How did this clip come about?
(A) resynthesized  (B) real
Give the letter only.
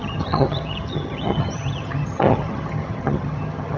A